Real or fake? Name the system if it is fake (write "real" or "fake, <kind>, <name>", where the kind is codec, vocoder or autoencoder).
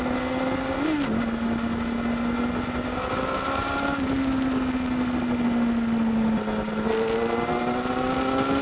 real